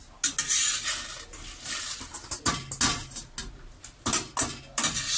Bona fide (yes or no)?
yes